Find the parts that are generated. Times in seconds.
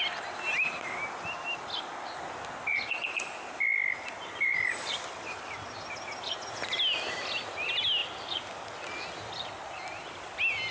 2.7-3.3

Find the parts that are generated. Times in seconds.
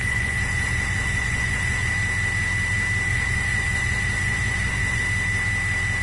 0.0-1.9; 3.1-5.0